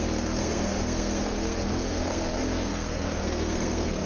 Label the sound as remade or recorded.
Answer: remade